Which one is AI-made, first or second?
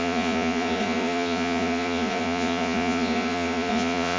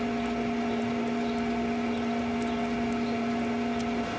first